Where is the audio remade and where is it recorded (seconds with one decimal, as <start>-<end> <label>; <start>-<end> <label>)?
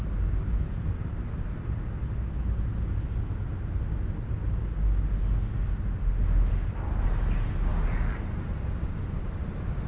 0.0-6.0 recorded; 6.0-6.5 remade; 6.5-9.9 recorded